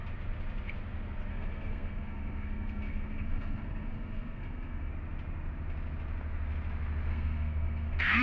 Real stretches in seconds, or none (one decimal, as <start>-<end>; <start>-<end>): 0.0-1.3; 4.9-7.1